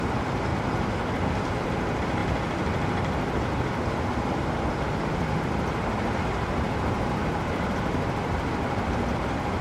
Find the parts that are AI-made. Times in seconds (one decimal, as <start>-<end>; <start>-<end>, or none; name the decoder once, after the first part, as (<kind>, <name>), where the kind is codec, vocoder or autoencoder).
0.0-0.5 (vocoder, BigVGAN v2); 1.5-2.2; 6.2-9.6